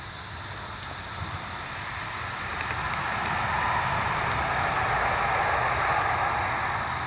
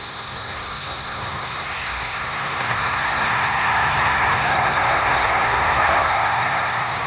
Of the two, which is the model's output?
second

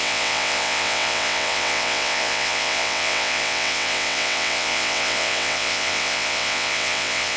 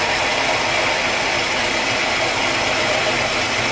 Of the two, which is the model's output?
first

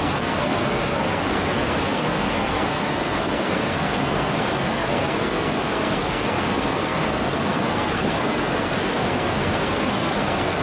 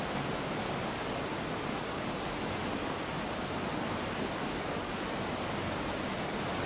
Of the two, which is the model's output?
first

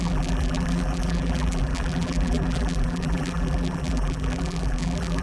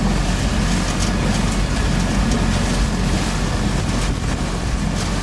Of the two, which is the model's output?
first